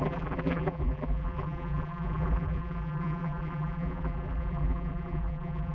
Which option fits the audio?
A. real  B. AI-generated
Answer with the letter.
B